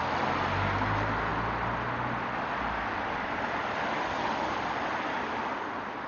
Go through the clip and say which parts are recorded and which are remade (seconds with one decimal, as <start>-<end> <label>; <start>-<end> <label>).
0.0-6.1 recorded